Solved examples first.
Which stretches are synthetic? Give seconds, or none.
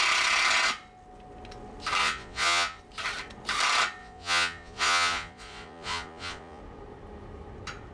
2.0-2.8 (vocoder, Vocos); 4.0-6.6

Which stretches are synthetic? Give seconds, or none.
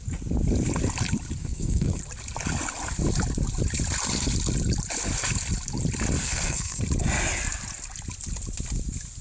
1.4-2.0 (codec, SNAC); 6.2-6.8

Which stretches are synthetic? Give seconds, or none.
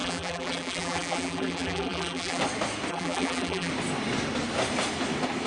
0.0-2.4 (vocoder, BigVGAN v2); 2.9-3.7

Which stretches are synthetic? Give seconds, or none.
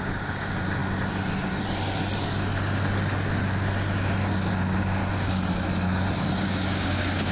0.0-0.8 (codec, DAC); 4.5-5.0; 6.2-7.3